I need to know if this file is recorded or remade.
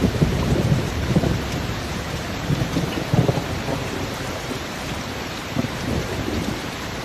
remade